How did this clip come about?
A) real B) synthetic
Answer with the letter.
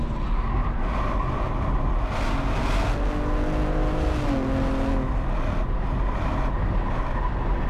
A